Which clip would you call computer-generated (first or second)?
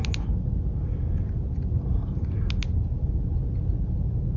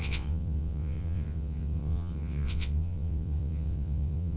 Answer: second